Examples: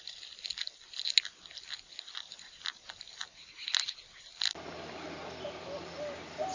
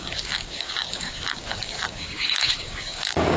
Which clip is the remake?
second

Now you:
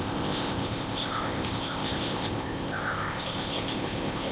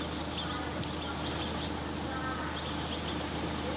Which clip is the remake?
first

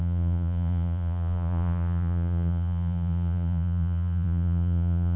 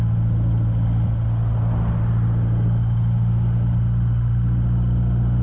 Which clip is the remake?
first